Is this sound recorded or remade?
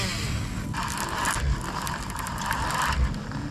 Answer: recorded